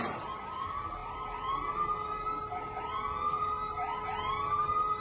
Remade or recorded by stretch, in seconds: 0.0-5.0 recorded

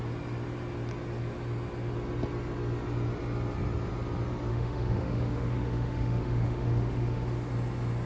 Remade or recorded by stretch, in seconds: 0.0-4.5 recorded; 4.5-7.5 remade; 7.5-8.1 recorded

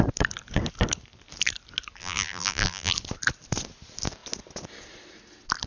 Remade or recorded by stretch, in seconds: 0.0-2.0 recorded; 2.0-2.9 remade; 2.9-5.7 recorded

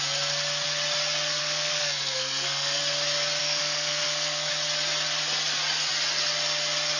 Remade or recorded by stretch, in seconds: 0.0-1.4 recorded; 1.4-2.8 remade; 2.8-3.4 recorded; 3.4-4.5 remade; 4.5-7.0 recorded

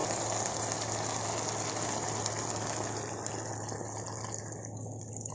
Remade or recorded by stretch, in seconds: 0.0-5.3 recorded

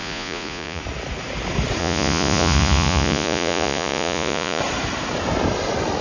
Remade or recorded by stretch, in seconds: 0.0-0.8 remade; 0.8-1.8 recorded; 1.8-4.6 remade; 4.6-6.0 recorded

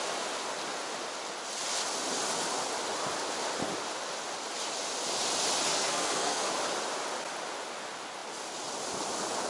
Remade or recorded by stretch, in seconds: 0.0-5.7 recorded; 5.7-6.5 remade; 6.5-9.5 recorded

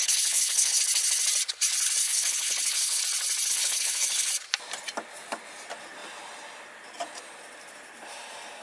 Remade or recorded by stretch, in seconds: 0.0-0.8 remade; 0.8-2.0 recorded; 2.0-3.0 remade; 3.0-3.5 recorded; 3.5-4.3 remade; 4.3-8.6 recorded